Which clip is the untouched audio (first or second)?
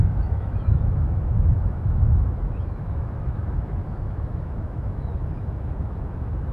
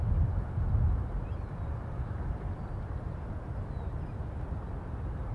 second